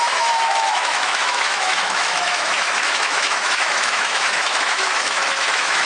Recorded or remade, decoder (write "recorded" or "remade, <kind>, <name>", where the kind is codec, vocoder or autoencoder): remade, autoencoder, DAC-VAE